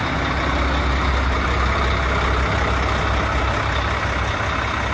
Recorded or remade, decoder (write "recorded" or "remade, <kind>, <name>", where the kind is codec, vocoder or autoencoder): recorded